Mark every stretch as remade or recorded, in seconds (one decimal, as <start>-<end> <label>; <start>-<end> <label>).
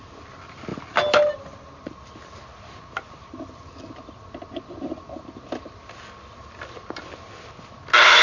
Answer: 0.0-8.2 recorded